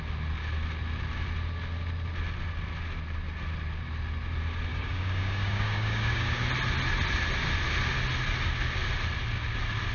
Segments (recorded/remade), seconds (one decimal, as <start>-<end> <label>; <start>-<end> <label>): 0.0-4.7 recorded; 4.7-6.4 remade; 6.4-9.9 recorded

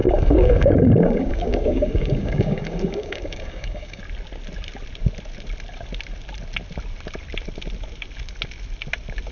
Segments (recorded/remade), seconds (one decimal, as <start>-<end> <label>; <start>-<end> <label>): 0.0-4.0 remade; 4.0-9.3 recorded

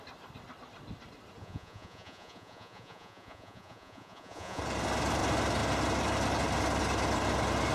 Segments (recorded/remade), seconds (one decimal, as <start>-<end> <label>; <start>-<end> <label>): 0.0-1.4 recorded; 1.4-4.6 remade; 4.6-7.7 recorded